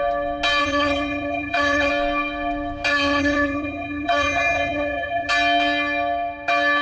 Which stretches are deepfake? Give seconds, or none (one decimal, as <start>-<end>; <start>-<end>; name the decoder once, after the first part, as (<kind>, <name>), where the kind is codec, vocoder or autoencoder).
0.6-1.9 (vocoder, HiFi-GAN); 2.9-5.3